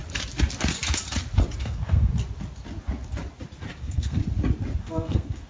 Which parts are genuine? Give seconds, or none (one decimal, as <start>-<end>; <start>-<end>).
0.0-1.6; 2.1-3.8; 4.2-4.8